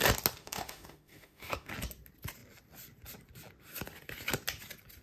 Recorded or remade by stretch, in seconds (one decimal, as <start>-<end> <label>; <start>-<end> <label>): 0.0-0.4 recorded; 0.4-1.7 remade; 1.7-5.0 recorded